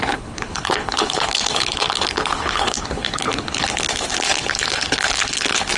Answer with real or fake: fake